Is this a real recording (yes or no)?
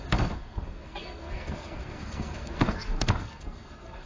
no